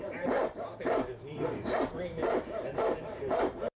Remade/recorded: remade